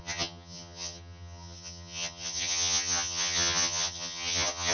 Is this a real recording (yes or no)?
no